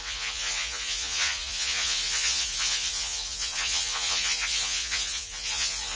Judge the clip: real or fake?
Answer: fake